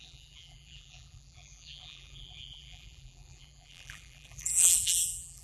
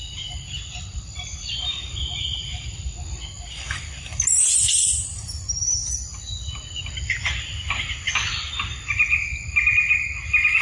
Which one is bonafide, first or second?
second